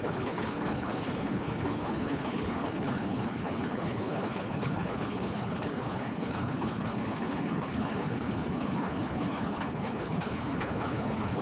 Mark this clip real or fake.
fake